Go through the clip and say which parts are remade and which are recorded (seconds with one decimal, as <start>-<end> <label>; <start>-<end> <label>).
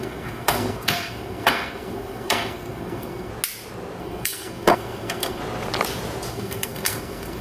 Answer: 0.0-3.3 remade; 3.3-4.0 recorded; 4.0-5.4 remade; 5.4-6.3 recorded; 6.3-7.4 remade